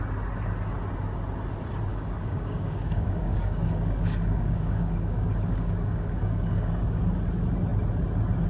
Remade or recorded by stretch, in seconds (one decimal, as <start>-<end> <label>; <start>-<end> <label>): 0.0-1.9 recorded; 1.9-7.0 remade; 7.0-8.5 recorded